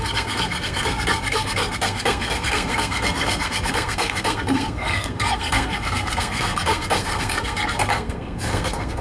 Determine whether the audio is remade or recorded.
remade